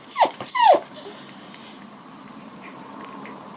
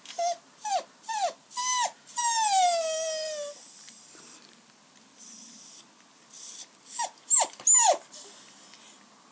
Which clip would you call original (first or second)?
second